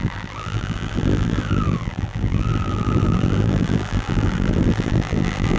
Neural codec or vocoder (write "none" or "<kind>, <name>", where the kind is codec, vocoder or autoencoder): vocoder, BigVGAN v2